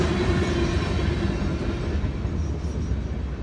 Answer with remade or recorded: recorded